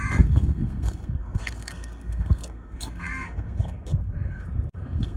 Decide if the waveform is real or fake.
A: fake